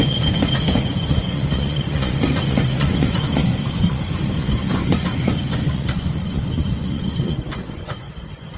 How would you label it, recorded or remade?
remade